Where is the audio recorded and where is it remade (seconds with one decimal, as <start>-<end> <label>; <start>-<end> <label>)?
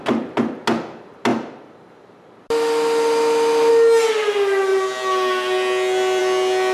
0.0-6.7 recorded